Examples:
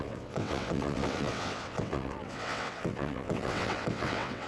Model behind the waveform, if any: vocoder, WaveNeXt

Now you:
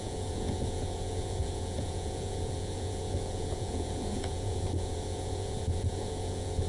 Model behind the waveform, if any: vocoder, Vocos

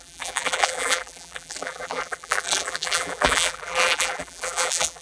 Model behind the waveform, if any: vocoder, BigVGAN v2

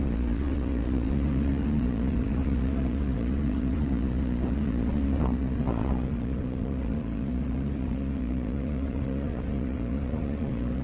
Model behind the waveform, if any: vocoder, Vocos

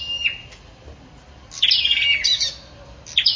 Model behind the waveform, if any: none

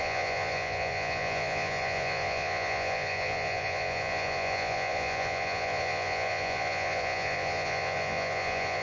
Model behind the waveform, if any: vocoder, Vocos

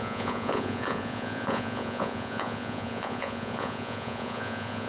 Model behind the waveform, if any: vocoder, Vocos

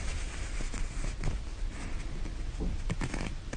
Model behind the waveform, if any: none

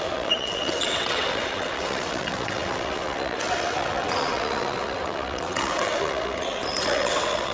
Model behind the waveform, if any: vocoder, WaveNeXt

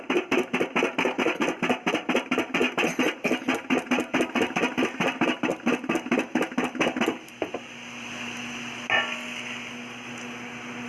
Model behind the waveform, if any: none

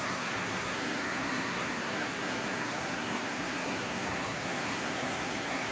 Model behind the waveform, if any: codec, SNAC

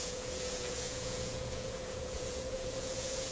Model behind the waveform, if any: vocoder, Vocos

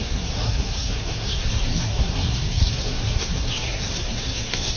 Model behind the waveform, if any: codec, SNAC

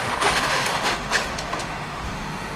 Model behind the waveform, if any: autoencoder, DAC-VAE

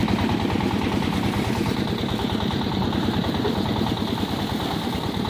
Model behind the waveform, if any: none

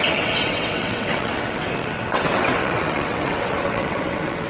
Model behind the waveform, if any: vocoder, WaveNeXt